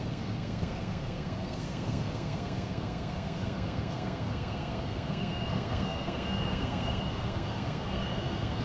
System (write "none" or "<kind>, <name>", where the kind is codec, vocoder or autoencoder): codec, SNAC